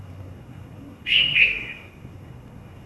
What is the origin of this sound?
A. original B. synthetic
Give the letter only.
B